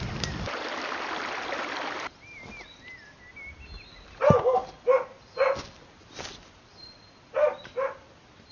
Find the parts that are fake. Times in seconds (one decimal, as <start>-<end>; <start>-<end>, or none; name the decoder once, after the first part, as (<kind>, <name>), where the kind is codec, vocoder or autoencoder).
none